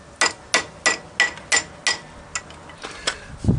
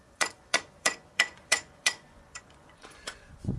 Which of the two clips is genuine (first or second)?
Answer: first